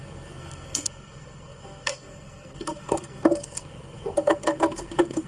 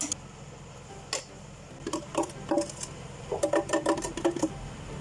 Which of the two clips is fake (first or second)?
first